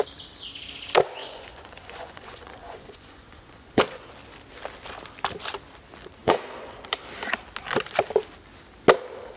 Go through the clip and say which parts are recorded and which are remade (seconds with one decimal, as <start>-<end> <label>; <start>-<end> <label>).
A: 0.0-1.2 recorded; 1.2-4.1 remade; 4.1-6.2 recorded; 6.2-6.8 remade; 6.8-9.4 recorded